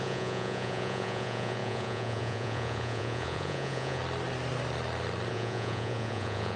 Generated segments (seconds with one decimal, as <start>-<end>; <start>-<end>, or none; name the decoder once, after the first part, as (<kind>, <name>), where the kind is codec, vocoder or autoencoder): 0.0-4.0 (vocoder, Vocos); 5.3-6.6